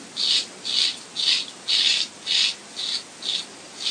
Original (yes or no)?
yes